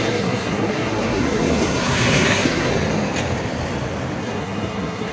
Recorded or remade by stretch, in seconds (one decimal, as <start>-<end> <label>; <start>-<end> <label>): 0.0-2.7 remade; 2.7-4.2 recorded; 4.2-5.1 remade